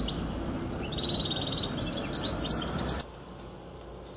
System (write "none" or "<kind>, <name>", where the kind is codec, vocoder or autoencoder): none